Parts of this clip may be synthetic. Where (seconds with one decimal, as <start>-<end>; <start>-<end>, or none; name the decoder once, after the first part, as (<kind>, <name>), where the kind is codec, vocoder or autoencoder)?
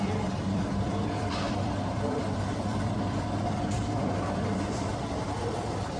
0.0-6.0 (vocoder, BigVGAN v2)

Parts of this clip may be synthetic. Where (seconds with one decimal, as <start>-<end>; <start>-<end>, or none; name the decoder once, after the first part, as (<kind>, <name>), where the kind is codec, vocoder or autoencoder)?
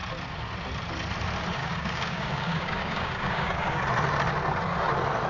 1.6-3.8 (codec, DAC)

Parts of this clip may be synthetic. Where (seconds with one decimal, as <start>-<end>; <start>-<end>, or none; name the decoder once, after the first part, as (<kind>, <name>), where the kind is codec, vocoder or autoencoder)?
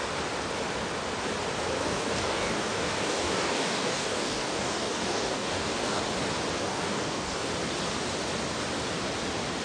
1.8-6.0 (codec, DAC); 6.6-7.5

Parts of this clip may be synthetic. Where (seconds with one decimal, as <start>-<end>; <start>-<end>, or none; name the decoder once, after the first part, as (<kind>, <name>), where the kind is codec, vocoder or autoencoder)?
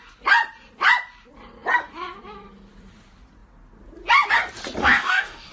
4.8-5.5 (codec, DAC)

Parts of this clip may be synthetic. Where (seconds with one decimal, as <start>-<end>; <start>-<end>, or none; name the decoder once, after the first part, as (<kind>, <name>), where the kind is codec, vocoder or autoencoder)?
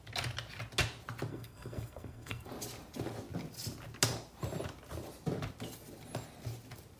1.3-2.5 (codec, SNAC)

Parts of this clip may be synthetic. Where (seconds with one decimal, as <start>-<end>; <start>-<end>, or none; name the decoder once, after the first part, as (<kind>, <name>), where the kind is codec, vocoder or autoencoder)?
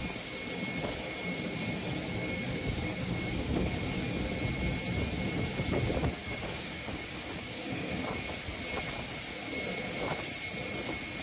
2.4-3.8 (codec, DAC); 6.2-8.1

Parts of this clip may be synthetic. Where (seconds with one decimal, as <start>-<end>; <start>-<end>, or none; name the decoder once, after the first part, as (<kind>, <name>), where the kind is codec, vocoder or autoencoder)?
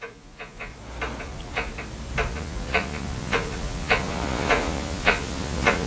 0.0-0.7 (vocoder, Vocos); 1.2-1.7; 2.3-5.9